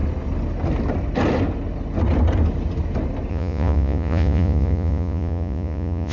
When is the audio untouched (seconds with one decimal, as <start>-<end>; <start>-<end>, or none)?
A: 0.0-3.3